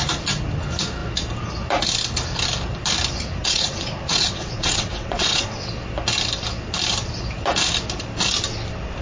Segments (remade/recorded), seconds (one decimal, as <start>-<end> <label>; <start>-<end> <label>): 0.0-3.4 recorded; 3.4-5.7 remade; 5.7-9.0 recorded